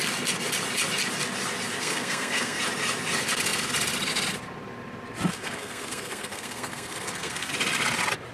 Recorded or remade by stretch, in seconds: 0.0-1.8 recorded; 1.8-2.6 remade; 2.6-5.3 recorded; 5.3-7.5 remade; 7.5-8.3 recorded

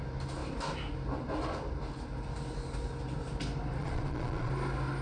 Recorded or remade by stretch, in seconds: 0.0-3.8 recorded; 3.8-4.5 remade; 4.5-5.0 recorded

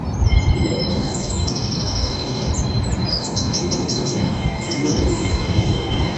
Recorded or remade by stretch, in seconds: 0.0-0.9 recorded; 0.9-2.5 remade; 2.5-3.1 recorded; 3.1-6.2 remade

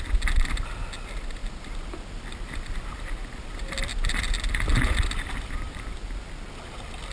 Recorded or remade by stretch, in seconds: 0.0-7.1 recorded

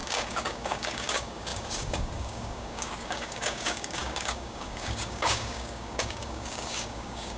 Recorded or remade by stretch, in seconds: 0.0-7.4 remade

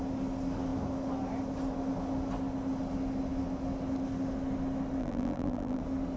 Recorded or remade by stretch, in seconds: 0.0-5.0 recorded; 5.0-5.8 remade; 5.8-6.2 recorded

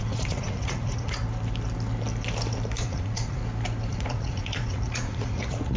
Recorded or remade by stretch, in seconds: 0.0-1.2 remade; 1.2-2.8 recorded; 2.8-3.4 remade; 3.4-3.9 recorded; 3.9-5.8 remade